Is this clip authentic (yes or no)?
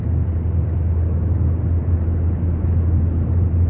yes